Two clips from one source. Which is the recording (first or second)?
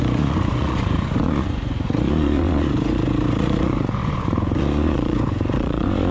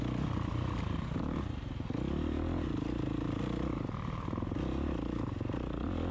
second